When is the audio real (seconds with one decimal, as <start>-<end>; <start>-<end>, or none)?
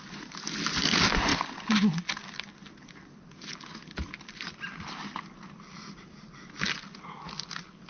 0.0-7.9